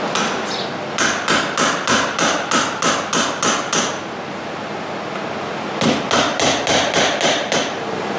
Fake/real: real